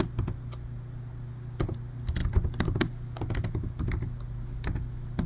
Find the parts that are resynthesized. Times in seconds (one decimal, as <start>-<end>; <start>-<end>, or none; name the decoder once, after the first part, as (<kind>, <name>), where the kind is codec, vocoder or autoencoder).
none